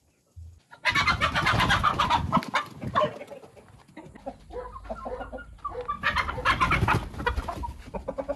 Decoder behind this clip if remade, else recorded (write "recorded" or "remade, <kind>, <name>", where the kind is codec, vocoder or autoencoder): recorded